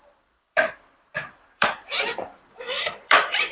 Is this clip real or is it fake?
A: fake